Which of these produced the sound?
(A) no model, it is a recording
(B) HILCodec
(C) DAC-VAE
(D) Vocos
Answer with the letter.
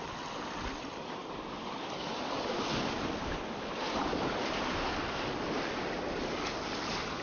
A